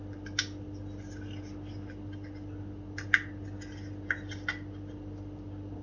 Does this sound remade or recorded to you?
recorded